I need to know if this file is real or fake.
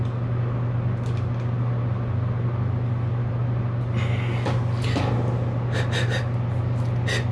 real